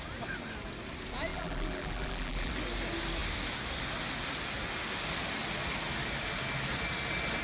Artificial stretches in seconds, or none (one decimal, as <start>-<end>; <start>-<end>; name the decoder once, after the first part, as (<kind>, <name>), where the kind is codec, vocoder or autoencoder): 1.3-2.5 (vocoder, BigVGAN v2)

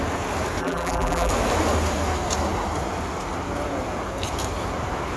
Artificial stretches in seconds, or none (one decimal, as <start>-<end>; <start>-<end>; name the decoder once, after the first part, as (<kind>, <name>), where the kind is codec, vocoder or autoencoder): 0.6-1.3 (vocoder, BigVGAN v2)

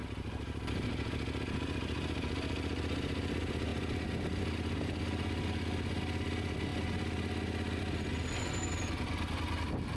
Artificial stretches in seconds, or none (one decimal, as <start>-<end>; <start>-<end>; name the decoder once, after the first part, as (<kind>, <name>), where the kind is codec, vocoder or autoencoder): none

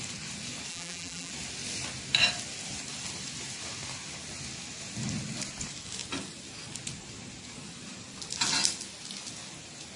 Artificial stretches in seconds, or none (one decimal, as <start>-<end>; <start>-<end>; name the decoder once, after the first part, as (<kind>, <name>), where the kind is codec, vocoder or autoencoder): 0.7-1.3 (vocoder, BigVGAN v2)